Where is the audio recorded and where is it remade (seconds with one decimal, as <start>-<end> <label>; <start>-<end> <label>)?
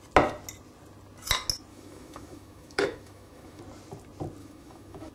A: 0.0-1.7 recorded; 1.7-3.6 remade; 3.6-4.4 recorded; 4.4-5.1 remade